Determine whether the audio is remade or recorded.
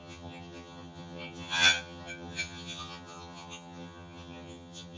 remade